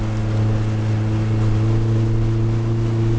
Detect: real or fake real